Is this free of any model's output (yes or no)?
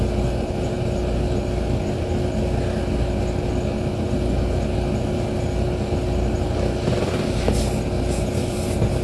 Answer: yes